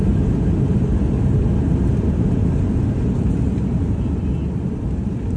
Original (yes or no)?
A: yes